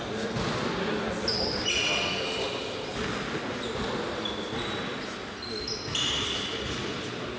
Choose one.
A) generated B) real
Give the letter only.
B